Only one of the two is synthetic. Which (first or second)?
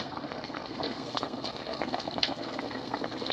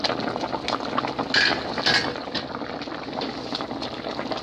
first